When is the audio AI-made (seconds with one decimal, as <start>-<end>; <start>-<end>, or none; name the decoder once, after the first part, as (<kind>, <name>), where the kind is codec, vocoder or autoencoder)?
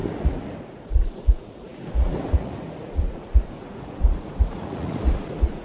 0.0-5.6 (vocoder, Vocos)